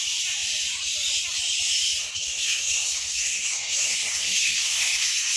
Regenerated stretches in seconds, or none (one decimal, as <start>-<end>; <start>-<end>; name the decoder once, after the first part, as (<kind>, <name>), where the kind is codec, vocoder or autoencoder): 2.0-5.4 (codec, SNAC)